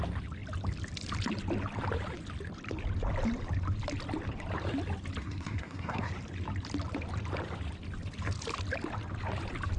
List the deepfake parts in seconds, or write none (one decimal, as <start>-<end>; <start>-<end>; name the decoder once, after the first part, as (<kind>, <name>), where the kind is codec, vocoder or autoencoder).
5.2-6.1 (codec, SNAC)

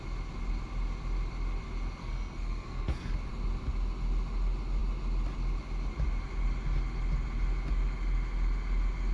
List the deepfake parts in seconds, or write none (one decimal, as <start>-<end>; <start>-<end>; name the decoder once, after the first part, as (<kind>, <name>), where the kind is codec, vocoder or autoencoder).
2.0-3.1 (codec, SNAC)

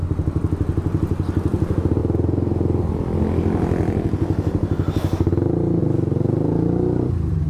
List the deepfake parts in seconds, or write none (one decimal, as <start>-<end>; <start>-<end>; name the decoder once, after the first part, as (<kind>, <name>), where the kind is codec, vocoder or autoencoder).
none

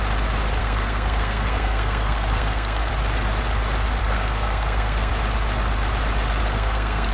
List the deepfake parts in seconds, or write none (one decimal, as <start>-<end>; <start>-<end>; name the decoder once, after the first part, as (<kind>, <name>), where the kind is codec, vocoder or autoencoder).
0.6-2.9 (codec, SNAC); 4.0-5.1; 6.4-7.1

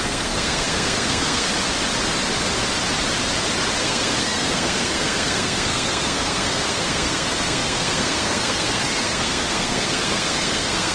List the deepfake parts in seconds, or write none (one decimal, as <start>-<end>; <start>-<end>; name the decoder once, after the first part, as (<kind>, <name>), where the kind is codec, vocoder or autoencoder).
0.0-1.5 (codec, SNAC); 3.8-10.9

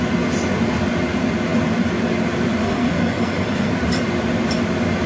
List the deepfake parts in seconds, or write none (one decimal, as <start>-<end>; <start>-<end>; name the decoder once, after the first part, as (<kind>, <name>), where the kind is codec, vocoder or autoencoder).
2.6-3.7 (codec, SNAC)

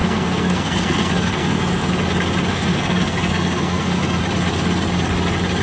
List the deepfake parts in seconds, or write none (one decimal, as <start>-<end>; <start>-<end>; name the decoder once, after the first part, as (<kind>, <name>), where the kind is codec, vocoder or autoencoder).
0.0-1.9 (codec, SNAC); 2.5-4.2